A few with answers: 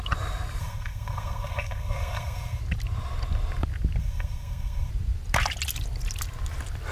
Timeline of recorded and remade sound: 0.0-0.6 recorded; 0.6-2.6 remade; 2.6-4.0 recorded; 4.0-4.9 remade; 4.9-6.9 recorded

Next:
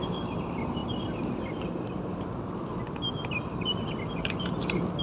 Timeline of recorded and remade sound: 0.0-5.0 recorded